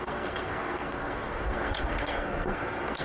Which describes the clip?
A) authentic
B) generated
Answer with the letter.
B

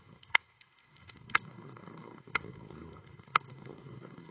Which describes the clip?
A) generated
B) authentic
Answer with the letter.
A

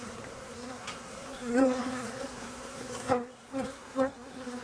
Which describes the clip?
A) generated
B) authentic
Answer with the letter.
A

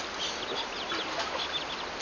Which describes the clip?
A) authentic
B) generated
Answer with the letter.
A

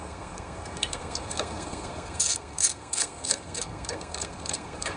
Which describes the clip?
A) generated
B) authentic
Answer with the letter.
A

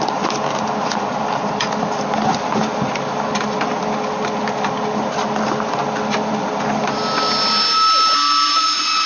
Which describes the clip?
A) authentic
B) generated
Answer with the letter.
A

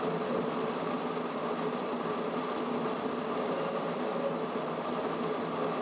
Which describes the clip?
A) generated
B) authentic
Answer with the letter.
B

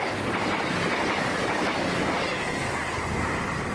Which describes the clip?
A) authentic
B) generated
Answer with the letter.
A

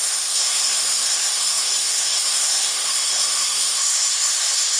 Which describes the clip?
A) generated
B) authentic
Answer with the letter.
A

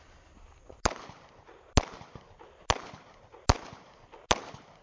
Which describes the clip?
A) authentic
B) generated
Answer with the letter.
A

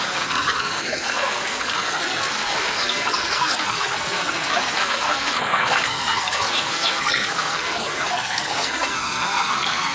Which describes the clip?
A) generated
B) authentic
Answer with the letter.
A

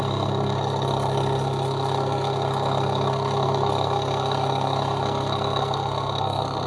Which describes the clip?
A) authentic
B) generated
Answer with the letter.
B